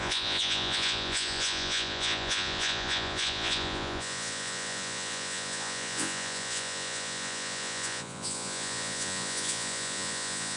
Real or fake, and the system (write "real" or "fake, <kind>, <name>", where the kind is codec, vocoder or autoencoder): fake, vocoder, Vocos